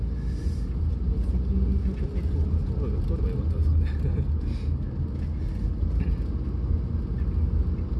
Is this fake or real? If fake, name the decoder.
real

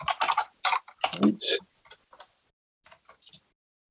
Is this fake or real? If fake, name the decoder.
real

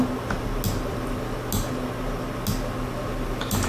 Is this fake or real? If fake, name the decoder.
real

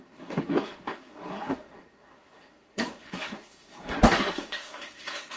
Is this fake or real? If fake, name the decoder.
fake, codec, SNAC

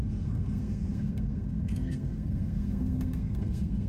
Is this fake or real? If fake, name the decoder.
fake, codec, SNAC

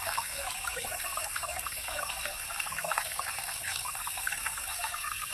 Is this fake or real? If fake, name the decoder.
fake, codec, SNAC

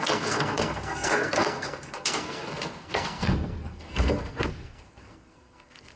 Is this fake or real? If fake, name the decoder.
fake, codec, SNAC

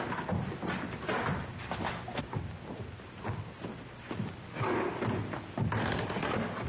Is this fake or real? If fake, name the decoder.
real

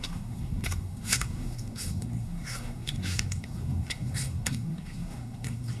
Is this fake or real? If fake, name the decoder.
fake, codec, SNAC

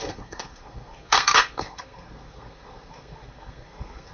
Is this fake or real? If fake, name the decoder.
fake, codec, SNAC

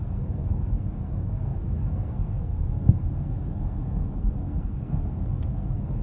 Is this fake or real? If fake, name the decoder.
fake, codec, SNAC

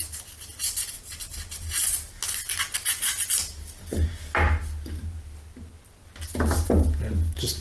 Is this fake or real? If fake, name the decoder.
real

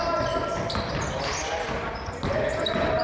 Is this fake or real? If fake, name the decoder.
real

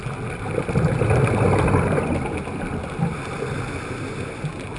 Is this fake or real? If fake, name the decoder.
real